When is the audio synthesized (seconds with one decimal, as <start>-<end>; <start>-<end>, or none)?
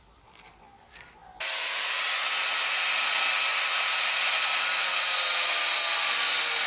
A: none